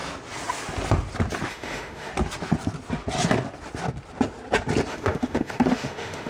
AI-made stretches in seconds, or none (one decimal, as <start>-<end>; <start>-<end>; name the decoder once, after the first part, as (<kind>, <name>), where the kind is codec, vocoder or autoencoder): 1.5-2.1 (autoencoder, DAC-VAE); 4.9-6.3